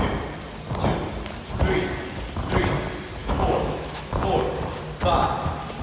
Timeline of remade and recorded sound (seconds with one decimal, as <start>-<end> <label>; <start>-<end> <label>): 0.0-3.2 recorded; 3.2-4.1 remade; 4.1-5.8 recorded